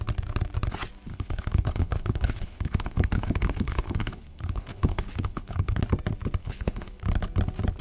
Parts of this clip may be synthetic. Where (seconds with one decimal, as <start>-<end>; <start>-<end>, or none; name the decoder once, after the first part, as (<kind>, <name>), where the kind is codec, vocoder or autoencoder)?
1.1-5.8 (codec, HILCodec); 6.4-7.0